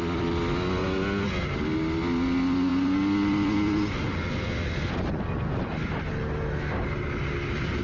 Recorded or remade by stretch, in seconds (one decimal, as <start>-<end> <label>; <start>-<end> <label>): 0.0-7.8 recorded